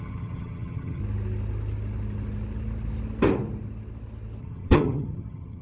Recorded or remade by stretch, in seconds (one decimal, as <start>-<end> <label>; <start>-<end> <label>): 0.0-1.0 remade; 1.0-4.4 recorded; 4.4-5.6 remade